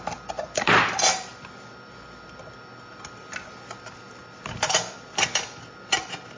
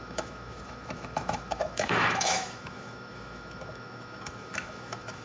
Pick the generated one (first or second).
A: second